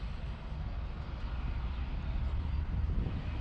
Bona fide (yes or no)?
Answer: yes